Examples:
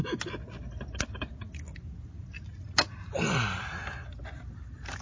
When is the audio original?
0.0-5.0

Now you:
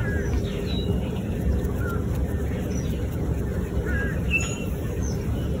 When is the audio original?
0.0-3.5; 4.7-5.6

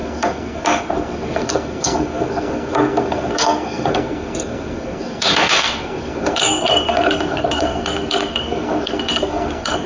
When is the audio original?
none

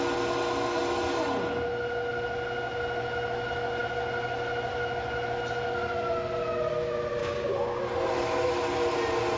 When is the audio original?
0.0-7.2; 7.8-9.4